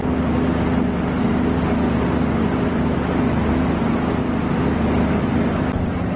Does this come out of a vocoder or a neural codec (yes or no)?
no